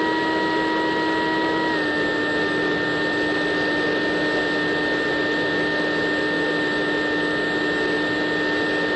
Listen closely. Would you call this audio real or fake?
real